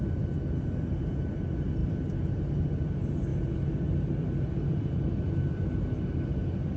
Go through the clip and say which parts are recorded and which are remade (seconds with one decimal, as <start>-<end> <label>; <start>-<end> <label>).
0.0-6.8 recorded